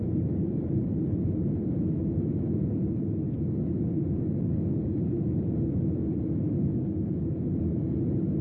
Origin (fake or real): fake